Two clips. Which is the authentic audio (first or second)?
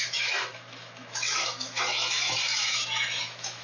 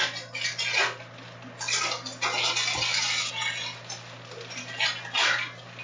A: second